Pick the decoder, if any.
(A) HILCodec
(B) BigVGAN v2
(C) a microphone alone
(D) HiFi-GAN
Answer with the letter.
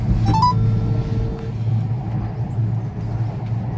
C